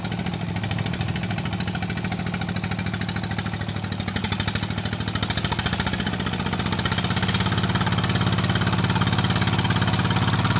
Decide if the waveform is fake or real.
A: real